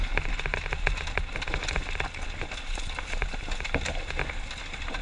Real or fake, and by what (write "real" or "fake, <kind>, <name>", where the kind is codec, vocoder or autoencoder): real